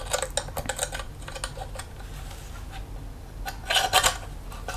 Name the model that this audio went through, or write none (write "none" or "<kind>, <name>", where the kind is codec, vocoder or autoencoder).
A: none